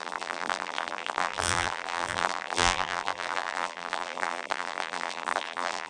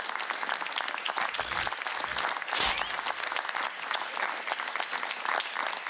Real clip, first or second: second